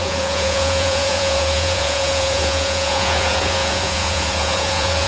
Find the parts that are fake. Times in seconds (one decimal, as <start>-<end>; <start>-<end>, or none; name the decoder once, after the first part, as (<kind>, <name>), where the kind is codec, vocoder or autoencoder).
0.0-5.1 (vocoder, Vocos)